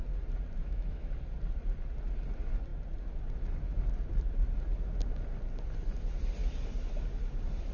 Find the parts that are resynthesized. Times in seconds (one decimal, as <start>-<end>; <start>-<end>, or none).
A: 0.6-1.1